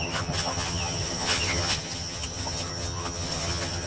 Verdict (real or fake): fake